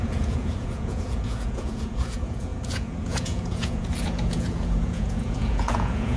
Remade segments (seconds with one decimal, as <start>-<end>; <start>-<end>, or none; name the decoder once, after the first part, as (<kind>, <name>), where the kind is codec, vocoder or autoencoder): 0.0-6.2 (vocoder, Vocos)